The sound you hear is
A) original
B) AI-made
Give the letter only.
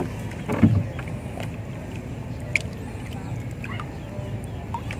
A